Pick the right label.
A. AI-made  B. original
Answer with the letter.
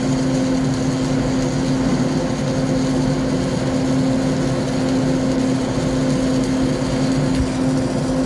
B